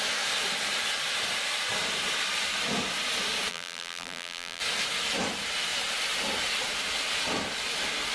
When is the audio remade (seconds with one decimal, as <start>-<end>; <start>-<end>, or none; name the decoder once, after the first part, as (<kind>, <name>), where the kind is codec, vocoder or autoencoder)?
3.5-4.6 (vocoder, BigVGAN v2)